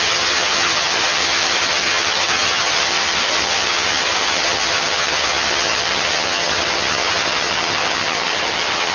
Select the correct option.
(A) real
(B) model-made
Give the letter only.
B